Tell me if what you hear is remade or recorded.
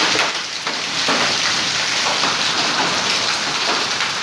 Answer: recorded